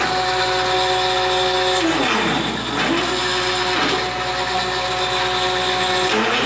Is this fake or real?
real